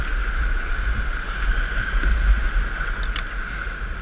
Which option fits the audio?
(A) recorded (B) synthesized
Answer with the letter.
A